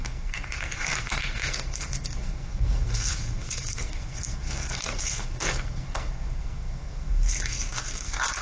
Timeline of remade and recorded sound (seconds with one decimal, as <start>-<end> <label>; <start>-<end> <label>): 0.0-8.4 remade